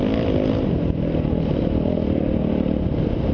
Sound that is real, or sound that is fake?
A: real